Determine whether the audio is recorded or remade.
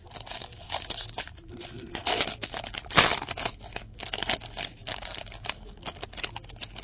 recorded